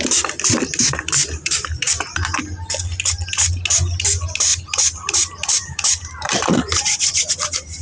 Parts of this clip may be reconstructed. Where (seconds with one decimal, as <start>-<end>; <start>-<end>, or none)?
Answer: 1.2-2.4; 4.5-7.3